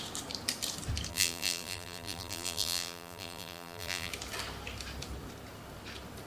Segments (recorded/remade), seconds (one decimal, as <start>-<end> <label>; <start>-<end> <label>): 0.0-1.1 recorded; 1.1-4.1 remade; 4.1-6.3 recorded